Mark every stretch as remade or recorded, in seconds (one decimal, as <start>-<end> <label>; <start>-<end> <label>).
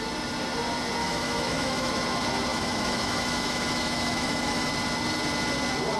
0.0-1.0 recorded; 1.0-1.9 remade; 1.9-2.5 recorded; 2.5-4.7 remade; 4.7-6.0 recorded